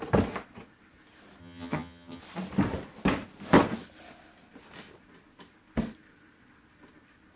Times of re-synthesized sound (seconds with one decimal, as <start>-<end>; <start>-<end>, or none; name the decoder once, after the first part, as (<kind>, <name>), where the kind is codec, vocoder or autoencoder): 1.4-2.2 (vocoder, HiFi-GAN)